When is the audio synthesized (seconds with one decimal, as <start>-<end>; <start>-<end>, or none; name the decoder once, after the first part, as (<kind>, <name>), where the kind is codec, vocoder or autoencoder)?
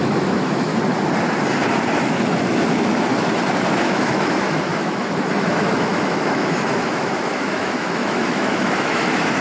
0.0-0.7 (autoencoder, DAC-VAE); 3.7-9.4